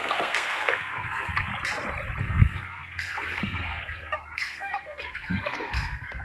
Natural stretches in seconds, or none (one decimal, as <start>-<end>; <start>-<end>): 1.5-2.2